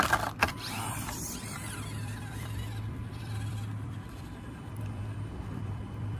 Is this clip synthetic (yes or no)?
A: yes